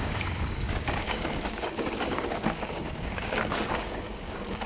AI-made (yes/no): yes